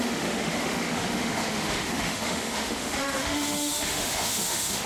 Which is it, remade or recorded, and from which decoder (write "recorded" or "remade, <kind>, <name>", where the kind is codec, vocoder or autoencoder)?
remade, autoencoder, DAC-VAE